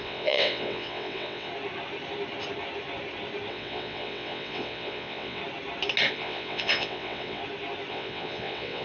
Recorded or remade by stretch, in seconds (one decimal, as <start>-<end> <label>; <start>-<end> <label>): 0.0-1.5 remade; 1.5-3.5 recorded; 3.5-5.4 remade; 5.4-6.1 recorded; 6.1-7.4 remade; 7.4-7.9 recorded; 7.9-8.8 remade